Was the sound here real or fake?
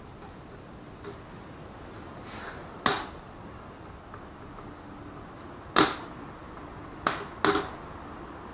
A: real